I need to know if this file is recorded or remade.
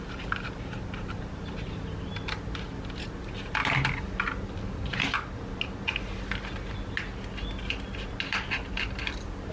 recorded